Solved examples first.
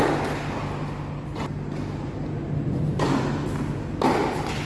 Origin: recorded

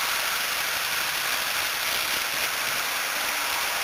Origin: remade